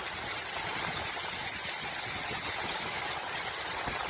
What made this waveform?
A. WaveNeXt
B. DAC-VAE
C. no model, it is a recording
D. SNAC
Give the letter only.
C